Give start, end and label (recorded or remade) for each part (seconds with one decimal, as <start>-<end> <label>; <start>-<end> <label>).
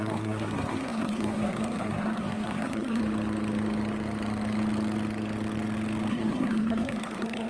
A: 0.0-3.0 remade; 3.0-6.1 recorded; 6.1-7.5 remade